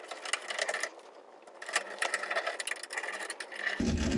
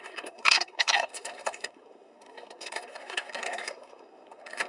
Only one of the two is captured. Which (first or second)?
first